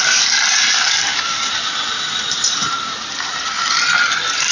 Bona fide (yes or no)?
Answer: no